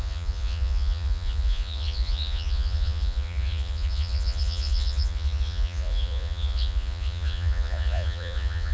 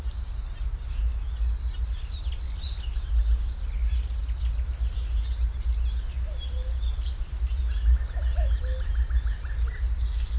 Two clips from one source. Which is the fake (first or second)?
first